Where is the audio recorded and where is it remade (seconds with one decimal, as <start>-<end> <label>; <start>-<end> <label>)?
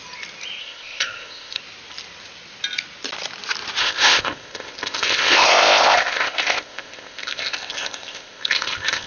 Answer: 0.0-0.6 recorded; 0.6-1.6 remade; 1.6-3.8 recorded; 3.8-9.1 remade